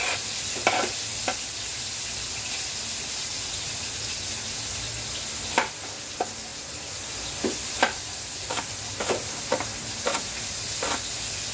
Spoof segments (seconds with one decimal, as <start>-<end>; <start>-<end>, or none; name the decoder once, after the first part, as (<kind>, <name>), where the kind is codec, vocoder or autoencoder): 1.3-3.8 (vocoder, BigVGAN v2); 6.5-9.9